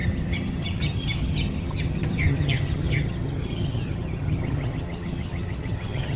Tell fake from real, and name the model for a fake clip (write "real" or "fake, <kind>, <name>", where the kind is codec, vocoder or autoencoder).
fake, vocoder, HiFi-GAN